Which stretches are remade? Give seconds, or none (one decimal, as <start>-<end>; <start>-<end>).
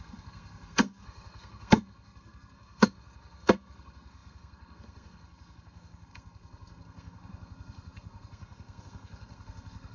0.0-9.9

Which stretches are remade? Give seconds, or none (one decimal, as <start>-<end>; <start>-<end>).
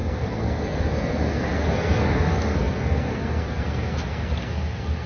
0.0-5.1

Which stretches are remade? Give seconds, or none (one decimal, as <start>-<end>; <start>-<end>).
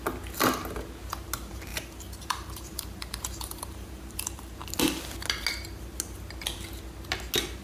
1.7-4.5